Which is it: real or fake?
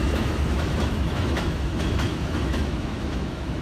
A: fake